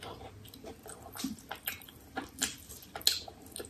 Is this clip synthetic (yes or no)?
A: no